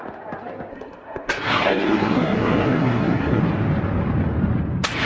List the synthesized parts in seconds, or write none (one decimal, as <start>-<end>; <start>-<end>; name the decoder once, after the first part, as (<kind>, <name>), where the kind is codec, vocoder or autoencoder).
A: 0.7-3.4 (codec, SNAC)